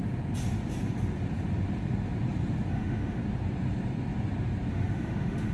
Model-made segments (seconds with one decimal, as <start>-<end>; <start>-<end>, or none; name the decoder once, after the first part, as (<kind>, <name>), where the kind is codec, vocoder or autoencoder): 2.7-3.2 (autoencoder, DAC-VAE); 4.7-5.5